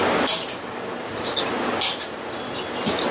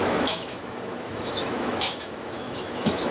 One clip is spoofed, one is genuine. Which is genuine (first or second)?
first